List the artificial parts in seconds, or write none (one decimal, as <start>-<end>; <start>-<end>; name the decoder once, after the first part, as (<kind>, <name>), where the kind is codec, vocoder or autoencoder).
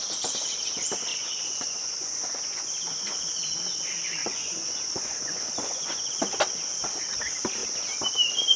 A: 1.1-2.7 (vocoder, Vocos); 4.2-6.1